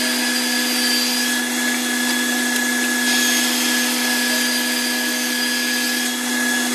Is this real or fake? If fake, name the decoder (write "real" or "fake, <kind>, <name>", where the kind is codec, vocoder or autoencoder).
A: real